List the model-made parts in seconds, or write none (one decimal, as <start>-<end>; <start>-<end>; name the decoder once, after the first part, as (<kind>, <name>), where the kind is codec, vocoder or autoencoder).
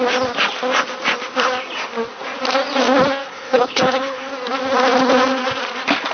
3.2-4.3 (codec, HILCodec)